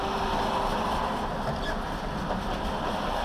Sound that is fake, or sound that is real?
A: real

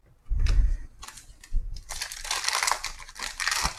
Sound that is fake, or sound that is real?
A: real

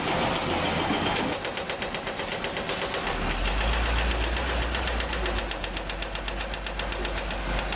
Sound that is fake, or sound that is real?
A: real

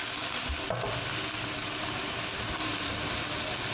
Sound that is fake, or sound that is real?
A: real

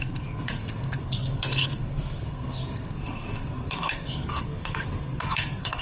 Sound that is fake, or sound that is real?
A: fake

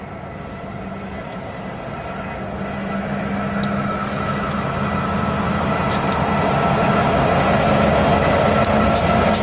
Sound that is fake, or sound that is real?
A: real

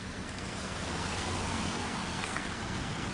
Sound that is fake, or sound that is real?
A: fake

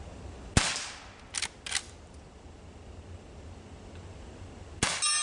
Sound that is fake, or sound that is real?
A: real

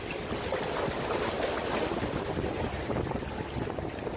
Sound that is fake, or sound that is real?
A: real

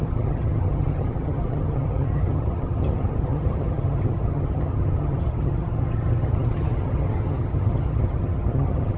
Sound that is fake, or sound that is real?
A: fake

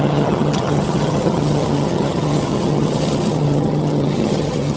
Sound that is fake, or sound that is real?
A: fake